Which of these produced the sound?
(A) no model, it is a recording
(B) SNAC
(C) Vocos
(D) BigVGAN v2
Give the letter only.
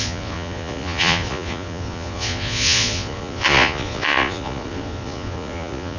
C